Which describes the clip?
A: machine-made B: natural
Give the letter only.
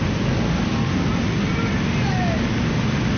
B